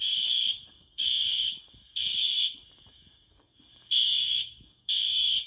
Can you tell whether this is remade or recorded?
remade